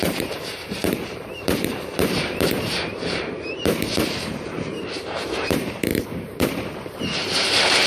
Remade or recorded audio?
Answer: remade